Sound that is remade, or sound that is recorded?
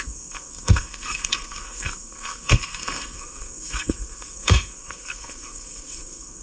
remade